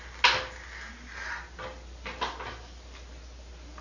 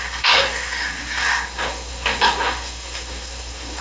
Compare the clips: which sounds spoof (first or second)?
second